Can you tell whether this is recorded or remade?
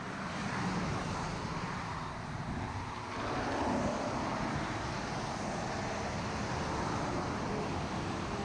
recorded